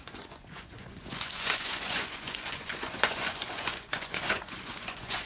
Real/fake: fake